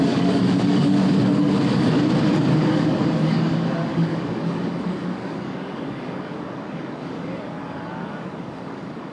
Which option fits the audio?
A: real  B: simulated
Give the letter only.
B